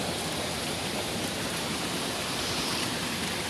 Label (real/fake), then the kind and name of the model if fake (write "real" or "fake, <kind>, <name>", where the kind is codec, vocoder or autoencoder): fake, vocoder, BigVGAN v2